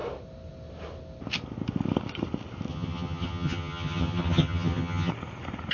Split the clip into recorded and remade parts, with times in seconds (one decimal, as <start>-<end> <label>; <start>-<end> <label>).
0.0-2.7 recorded; 2.7-5.1 remade; 5.1-5.7 recorded